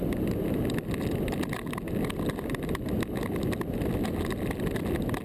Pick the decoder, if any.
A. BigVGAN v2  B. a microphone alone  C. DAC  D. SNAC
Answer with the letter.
B